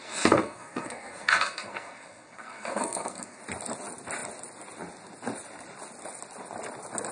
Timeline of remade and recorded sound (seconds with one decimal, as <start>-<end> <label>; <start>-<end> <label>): 0.0-3.4 remade; 3.4-7.1 recorded